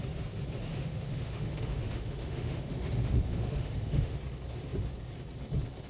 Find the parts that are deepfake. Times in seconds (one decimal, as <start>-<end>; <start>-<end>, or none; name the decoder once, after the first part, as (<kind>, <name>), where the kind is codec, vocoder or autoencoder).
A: 0.7-4.2 (autoencoder, DAC-VAE)